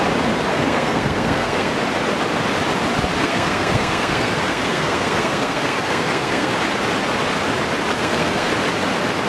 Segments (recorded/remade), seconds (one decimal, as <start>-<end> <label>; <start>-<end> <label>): 0.0-0.5 recorded; 0.5-1.7 remade; 1.7-3.2 recorded; 3.2-6.5 remade; 6.5-7.9 recorded; 7.9-8.5 remade; 8.5-9.3 recorded